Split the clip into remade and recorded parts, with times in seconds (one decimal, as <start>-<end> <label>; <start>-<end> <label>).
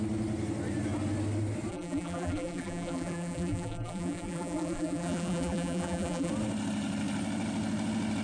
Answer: 0.0-1.7 recorded; 1.7-6.3 remade; 6.3-8.2 recorded